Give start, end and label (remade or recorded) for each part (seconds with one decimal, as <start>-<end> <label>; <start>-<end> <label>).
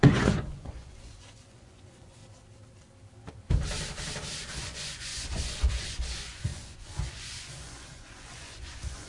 0.0-2.2 remade; 2.2-4.4 recorded; 4.4-9.1 remade